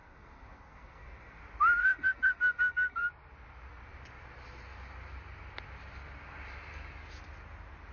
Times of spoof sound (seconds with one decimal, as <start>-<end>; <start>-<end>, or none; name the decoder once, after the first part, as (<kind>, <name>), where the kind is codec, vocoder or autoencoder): 0.0-1.4 (codec, SNAC); 1.8-3.1